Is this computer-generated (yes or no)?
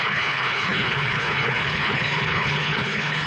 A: yes